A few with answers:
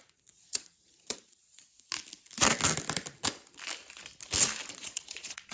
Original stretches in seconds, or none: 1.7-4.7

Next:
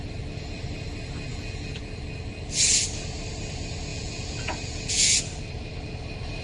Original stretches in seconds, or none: 0.0-1.3; 1.8-3.9; 5.2-6.4

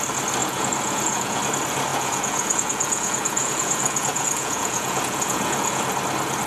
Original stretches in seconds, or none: 0.0-0.4; 1.4-1.9; 5.8-6.5

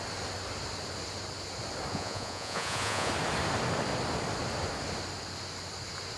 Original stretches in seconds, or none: 0.0-1.9; 3.1-6.2

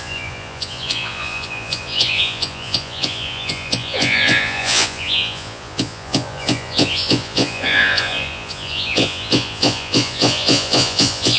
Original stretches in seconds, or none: none